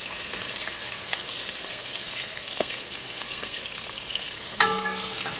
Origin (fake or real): fake